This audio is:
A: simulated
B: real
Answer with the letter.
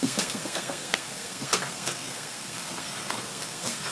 A